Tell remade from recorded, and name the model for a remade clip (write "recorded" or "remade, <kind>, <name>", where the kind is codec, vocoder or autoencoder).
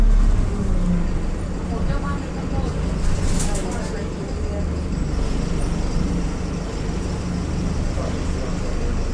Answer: recorded